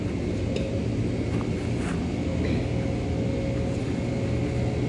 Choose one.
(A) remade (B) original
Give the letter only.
B